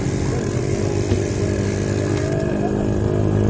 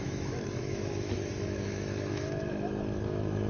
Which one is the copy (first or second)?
second